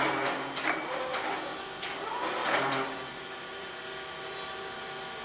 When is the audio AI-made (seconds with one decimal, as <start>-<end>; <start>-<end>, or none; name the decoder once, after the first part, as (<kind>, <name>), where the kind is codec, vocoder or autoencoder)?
1.5-2.2 (vocoder, BigVGAN v2); 3.1-3.8